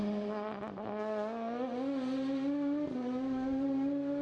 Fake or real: real